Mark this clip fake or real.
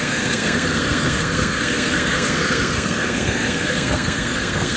fake